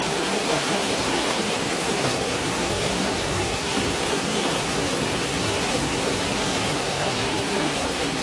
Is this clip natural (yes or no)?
no